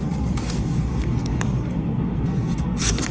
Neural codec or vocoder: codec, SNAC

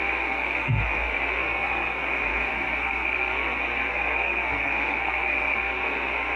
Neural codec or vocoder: codec, SNAC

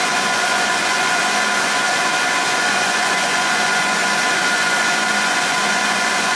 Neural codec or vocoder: vocoder, Vocos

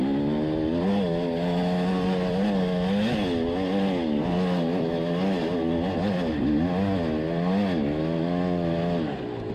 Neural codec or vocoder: none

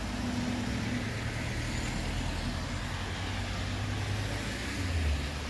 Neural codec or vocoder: none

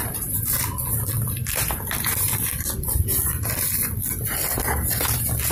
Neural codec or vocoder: none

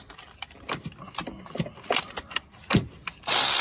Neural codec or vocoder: none